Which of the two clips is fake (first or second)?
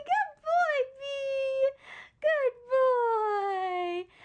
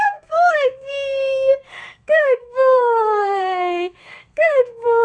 second